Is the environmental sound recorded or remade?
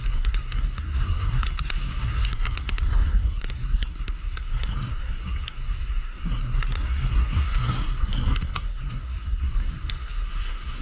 remade